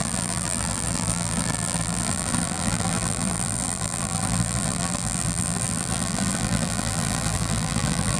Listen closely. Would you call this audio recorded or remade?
remade